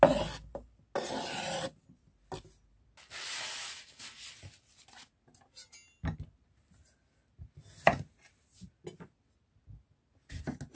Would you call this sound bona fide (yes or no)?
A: yes